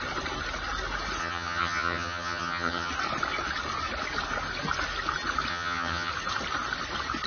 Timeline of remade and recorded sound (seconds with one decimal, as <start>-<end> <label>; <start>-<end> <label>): 0.0-1.2 recorded; 1.2-2.9 remade; 2.9-5.5 recorded; 5.5-6.1 remade; 6.1-7.3 recorded